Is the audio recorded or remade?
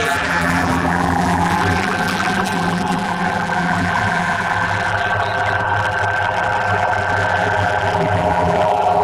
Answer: remade